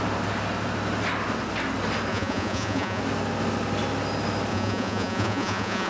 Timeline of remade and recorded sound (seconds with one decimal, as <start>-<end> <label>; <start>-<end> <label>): 0.0-2.1 recorded; 2.1-3.0 remade; 3.0-4.5 recorded; 4.5-5.9 remade